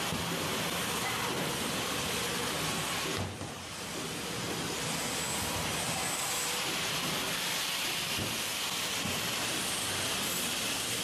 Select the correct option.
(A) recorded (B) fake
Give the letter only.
A